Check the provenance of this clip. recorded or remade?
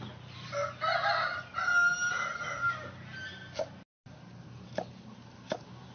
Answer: recorded